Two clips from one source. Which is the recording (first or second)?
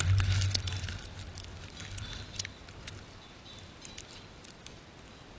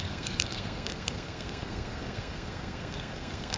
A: first